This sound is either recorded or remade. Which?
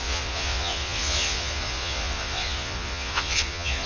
remade